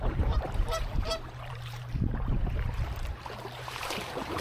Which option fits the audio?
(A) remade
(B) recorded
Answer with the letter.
A